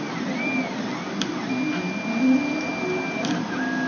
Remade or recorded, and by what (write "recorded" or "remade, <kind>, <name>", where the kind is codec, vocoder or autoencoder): recorded